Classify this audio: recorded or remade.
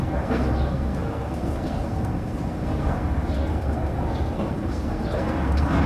remade